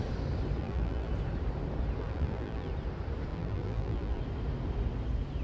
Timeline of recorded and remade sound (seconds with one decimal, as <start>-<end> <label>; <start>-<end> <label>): 0.0-0.6 recorded; 0.6-1.1 remade; 1.1-2.0 recorded; 2.0-2.7 remade; 2.7-3.3 recorded; 3.3-4.2 remade; 4.2-5.4 recorded

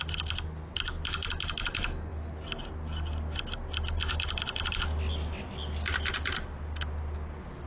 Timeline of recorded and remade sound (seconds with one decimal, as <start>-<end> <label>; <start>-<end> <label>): 0.0-7.7 recorded

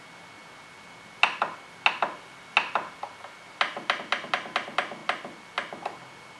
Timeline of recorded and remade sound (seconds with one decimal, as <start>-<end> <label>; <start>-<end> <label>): 0.0-6.4 recorded

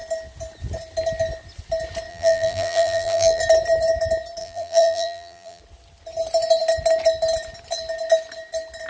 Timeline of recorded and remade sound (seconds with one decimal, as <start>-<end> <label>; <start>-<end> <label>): 0.0-2.1 recorded; 2.1-3.4 remade; 3.4-4.4 recorded; 4.4-5.6 remade; 5.6-8.9 recorded

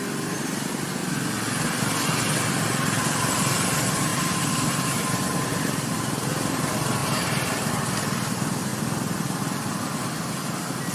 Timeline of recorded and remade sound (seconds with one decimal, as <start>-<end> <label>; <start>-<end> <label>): 0.0-4.1 recorded; 4.1-6.0 remade; 6.0-7.0 recorded; 7.0-7.7 remade; 7.7-10.9 recorded

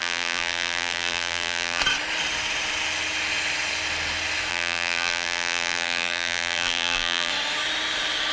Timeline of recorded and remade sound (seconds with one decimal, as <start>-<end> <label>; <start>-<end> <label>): 0.0-1.8 remade; 1.8-4.5 recorded; 4.5-7.3 remade; 7.3-8.3 recorded